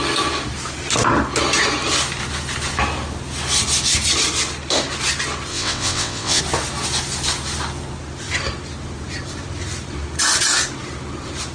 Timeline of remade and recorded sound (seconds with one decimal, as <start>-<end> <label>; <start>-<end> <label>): 0.0-5.5 recorded; 5.5-6.4 remade; 6.4-11.5 recorded